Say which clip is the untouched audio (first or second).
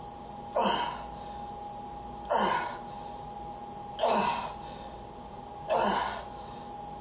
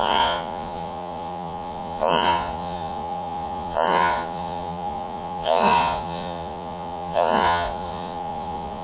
first